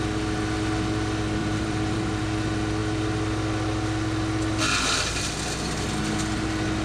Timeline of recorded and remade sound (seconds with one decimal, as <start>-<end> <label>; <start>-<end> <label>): 0.0-1.4 recorded; 1.4-2.2 remade; 2.2-6.8 recorded